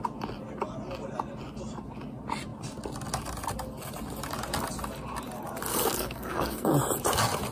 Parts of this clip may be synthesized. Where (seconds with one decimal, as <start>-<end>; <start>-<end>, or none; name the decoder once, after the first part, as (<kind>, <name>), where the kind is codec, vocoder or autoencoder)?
5.7-6.7 (codec, SNAC)